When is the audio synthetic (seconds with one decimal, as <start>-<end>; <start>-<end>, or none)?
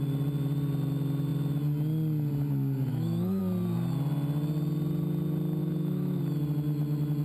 2.9-3.4; 5.6-6.2